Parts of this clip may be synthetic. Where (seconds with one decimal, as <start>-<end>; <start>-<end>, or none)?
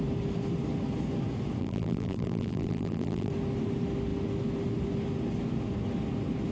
1.6-3.3